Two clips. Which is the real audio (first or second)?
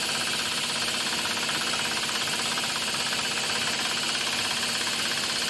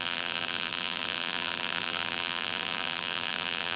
first